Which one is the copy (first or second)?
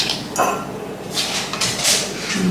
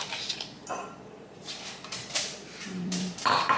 second